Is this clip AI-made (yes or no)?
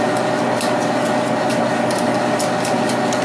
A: no